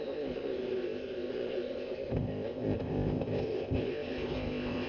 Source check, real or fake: fake